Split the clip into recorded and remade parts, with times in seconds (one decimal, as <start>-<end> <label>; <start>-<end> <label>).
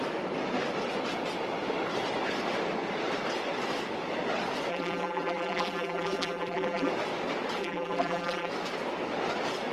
0.0-4.7 recorded; 4.7-6.9 remade; 6.9-7.6 recorded; 7.6-8.5 remade; 8.5-9.7 recorded